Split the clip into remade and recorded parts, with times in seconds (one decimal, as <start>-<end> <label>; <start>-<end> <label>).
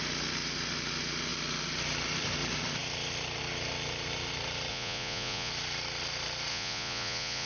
0.0-4.7 recorded; 4.7-5.5 remade; 5.5-6.5 recorded; 6.5-7.5 remade